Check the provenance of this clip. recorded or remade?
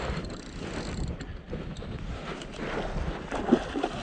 recorded